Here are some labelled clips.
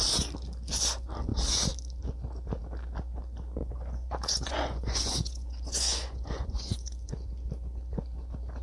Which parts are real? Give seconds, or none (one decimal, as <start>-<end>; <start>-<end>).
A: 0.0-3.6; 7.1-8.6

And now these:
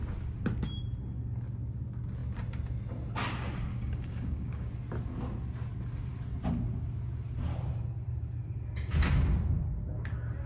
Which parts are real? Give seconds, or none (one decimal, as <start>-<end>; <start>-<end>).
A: 0.0-3.7; 4.7-10.5

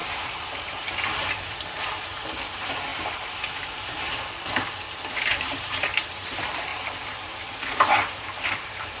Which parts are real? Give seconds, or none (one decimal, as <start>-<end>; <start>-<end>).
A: 0.8-2.9; 4.1-5.3; 6.1-6.7

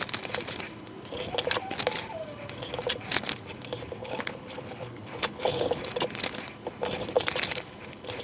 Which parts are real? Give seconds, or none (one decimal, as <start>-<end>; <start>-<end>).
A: 0.0-4.0; 5.8-8.2

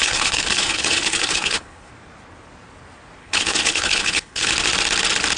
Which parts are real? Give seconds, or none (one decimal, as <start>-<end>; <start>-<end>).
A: 1.9-3.2; 4.5-5.4

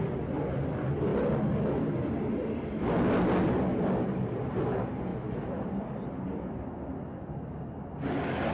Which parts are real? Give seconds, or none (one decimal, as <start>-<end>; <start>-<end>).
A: 0.0-8.5